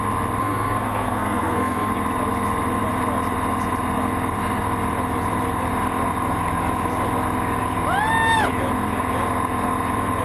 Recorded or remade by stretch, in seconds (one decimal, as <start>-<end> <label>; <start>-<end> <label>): 0.0-0.4 recorded; 0.4-1.9 remade; 1.9-10.2 recorded